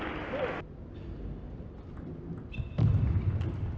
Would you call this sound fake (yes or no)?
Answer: no